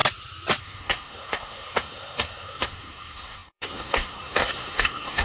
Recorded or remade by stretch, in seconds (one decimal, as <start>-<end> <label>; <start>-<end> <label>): 0.0-0.6 recorded; 0.6-5.2 remade